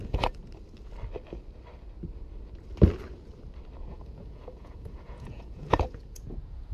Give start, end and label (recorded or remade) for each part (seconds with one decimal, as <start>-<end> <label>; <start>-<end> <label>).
0.0-0.4 remade; 0.4-3.9 recorded; 3.9-6.7 remade